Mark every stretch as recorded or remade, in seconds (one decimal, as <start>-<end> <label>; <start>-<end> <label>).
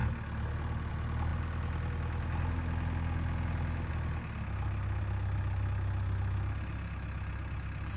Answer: 0.0-8.0 recorded